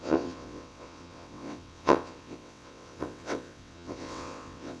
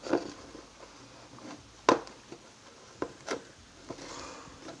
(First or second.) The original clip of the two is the second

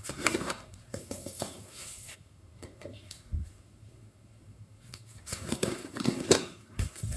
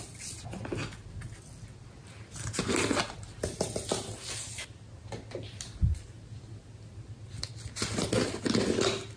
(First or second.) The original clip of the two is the second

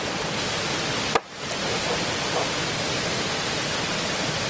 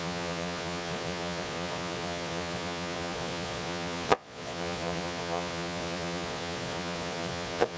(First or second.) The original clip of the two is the first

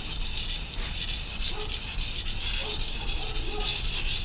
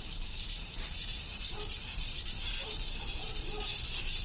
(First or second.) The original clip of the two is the first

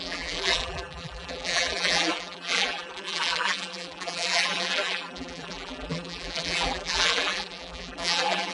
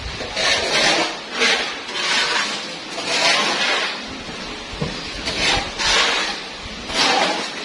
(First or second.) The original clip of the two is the second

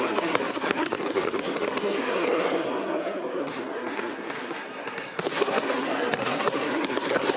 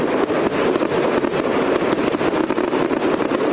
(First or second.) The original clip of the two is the second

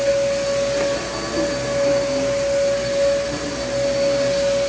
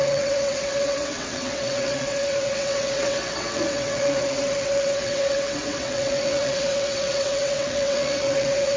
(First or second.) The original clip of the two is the first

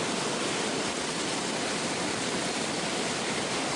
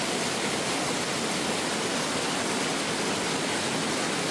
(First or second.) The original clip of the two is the second